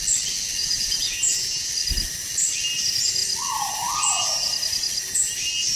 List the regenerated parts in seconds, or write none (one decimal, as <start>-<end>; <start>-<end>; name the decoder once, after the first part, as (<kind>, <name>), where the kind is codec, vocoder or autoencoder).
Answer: 0.6-1.7 (vocoder, Vocos)

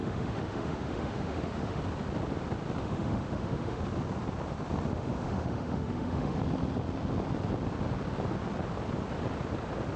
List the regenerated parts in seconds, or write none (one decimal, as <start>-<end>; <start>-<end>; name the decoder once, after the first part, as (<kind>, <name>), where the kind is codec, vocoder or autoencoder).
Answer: 0.0-1.8 (autoencoder, DAC-VAE); 2.8-3.8; 4.9-6.4

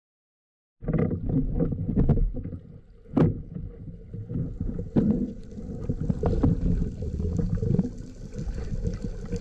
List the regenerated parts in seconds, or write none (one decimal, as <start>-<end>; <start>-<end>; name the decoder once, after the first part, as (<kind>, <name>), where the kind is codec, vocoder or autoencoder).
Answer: none

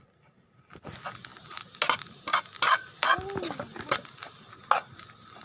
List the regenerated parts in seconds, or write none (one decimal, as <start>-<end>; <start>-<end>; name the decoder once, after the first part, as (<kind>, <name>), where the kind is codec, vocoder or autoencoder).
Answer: none

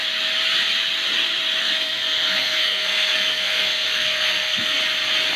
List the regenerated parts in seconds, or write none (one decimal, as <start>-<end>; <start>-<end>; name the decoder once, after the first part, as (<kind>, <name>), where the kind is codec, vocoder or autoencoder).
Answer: 1.6-4.8 (codec, SNAC)

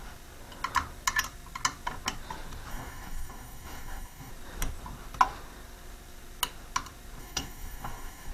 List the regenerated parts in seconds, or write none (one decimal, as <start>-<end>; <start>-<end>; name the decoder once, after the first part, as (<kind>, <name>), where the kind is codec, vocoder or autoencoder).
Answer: 2.7-4.3 (codec, DAC); 7.2-8.3

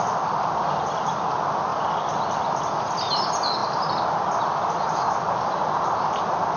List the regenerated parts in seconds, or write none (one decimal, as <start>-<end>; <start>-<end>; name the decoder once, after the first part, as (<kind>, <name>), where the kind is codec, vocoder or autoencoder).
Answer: none